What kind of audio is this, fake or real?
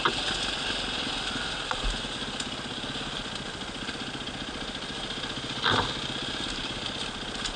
real